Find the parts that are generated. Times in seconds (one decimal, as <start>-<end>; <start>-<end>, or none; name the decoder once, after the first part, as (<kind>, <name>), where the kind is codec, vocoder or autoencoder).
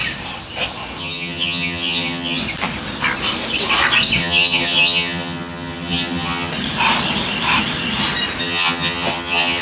1.0-2.4 (vocoder, HiFi-GAN); 4.2-6.5; 8.4-9.6